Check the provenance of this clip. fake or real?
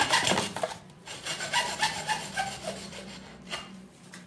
real